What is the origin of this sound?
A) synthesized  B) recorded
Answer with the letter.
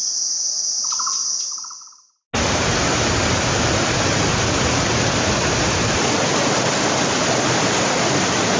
B